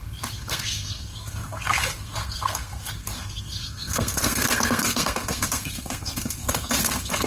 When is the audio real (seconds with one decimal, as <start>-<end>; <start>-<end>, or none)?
none